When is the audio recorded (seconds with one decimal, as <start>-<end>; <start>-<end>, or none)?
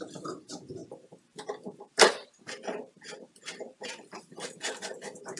none